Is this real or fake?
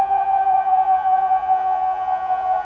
fake